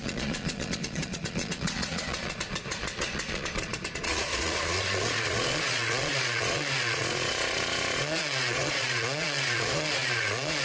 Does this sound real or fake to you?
fake